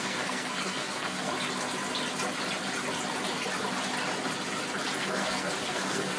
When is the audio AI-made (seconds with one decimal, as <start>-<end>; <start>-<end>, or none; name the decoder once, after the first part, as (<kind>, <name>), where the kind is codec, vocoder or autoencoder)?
0.0-1.3 (codec, SNAC); 5.0-6.2